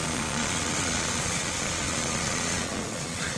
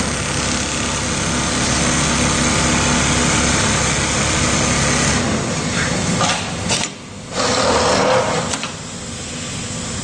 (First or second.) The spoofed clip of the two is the first